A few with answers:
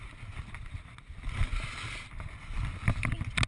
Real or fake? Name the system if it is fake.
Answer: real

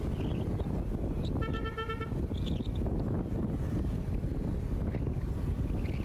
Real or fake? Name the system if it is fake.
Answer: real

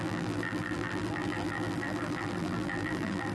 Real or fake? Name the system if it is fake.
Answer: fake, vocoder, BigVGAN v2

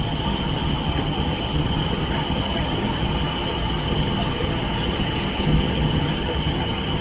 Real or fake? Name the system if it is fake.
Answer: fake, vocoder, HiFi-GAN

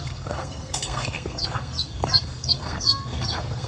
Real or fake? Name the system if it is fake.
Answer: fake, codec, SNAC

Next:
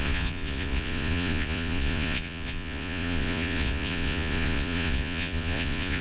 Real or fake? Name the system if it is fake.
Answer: fake, vocoder, Vocos